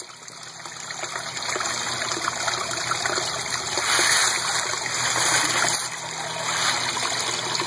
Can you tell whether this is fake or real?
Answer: real